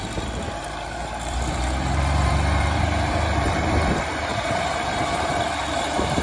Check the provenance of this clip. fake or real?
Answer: fake